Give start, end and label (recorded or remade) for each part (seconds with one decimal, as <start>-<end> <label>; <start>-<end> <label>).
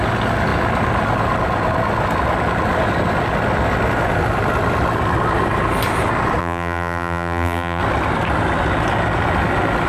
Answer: 0.0-6.4 recorded; 6.4-7.8 remade; 7.8-9.9 recorded